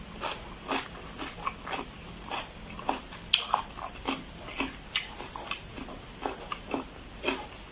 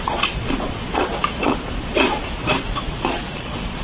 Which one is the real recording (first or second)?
first